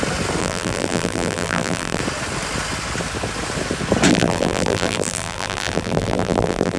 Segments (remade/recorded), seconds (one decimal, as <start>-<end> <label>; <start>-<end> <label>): 0.0-0.4 recorded; 0.4-2.0 remade; 2.0-4.1 recorded; 4.1-6.8 remade